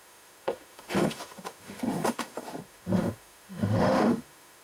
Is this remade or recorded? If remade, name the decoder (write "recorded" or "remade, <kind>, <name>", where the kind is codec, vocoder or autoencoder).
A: remade, autoencoder, DAC-VAE